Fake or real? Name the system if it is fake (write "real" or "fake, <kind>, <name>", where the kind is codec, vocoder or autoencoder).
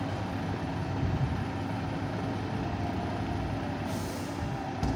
real